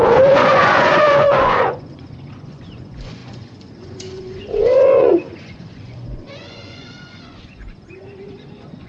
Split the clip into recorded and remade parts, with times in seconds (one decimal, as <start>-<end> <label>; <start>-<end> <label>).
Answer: 0.0-8.9 remade